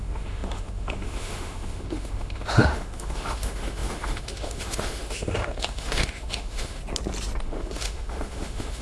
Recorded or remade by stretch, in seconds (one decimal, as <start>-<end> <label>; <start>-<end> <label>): 0.0-6.8 remade; 6.8-7.4 recorded; 7.4-8.8 remade